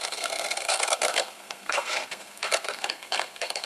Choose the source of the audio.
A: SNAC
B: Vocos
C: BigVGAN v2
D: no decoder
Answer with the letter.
A